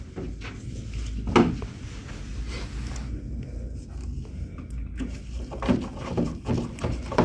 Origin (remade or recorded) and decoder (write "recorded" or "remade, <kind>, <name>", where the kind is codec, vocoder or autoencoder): recorded